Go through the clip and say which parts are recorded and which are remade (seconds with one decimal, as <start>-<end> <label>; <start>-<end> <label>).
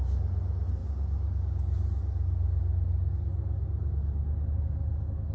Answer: 0.0-5.3 recorded